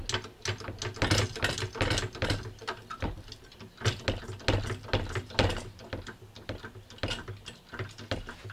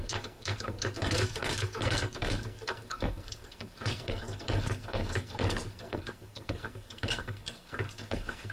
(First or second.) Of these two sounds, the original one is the first